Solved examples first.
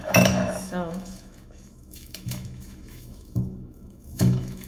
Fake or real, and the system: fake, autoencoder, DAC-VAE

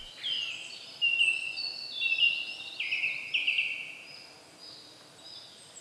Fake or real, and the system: real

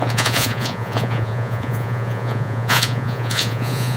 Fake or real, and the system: fake, vocoder, Vocos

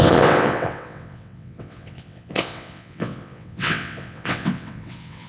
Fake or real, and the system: fake, vocoder, WaveNeXt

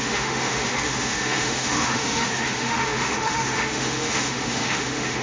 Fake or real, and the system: fake, autoencoder, DAC-VAE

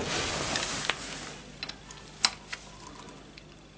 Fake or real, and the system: real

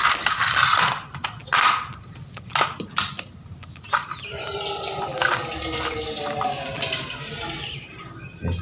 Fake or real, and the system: real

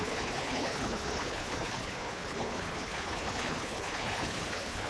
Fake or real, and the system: fake, codec, HILCodec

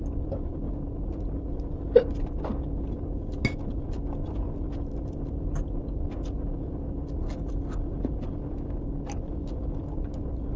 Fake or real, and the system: real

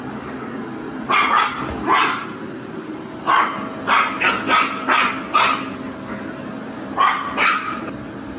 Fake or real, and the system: real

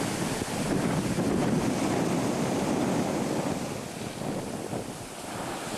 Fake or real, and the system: real